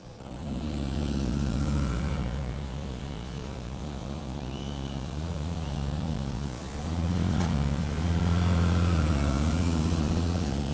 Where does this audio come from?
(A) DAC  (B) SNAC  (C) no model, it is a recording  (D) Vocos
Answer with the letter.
D